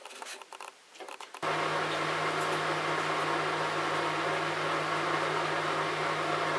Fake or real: real